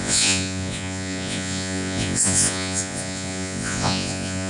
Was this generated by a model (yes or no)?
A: yes